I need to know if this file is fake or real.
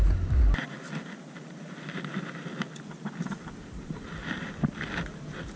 real